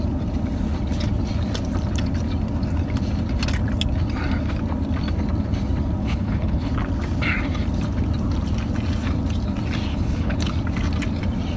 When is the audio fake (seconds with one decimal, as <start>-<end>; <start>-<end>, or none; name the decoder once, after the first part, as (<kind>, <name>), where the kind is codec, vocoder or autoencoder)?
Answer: 6.0-6.7 (codec, HILCodec); 9.9-10.5